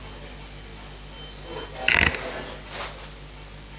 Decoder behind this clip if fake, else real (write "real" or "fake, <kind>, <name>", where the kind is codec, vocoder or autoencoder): real